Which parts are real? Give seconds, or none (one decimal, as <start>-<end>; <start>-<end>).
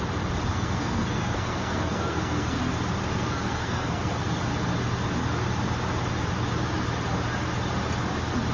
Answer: 0.0-0.5; 2.6-3.1; 4.4-8.5